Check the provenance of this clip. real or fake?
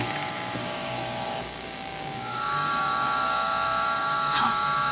fake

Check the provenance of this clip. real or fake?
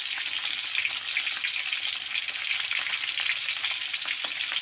real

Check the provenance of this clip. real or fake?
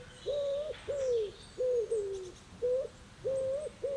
real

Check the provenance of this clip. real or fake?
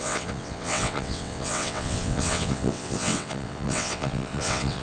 fake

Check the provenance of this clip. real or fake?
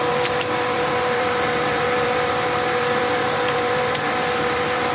fake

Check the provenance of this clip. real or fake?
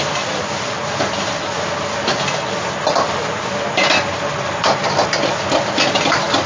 real